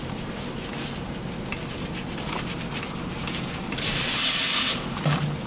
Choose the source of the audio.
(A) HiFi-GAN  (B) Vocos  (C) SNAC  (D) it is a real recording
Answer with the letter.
D